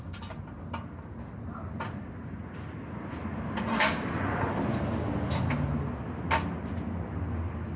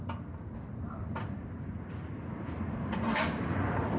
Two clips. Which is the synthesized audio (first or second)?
second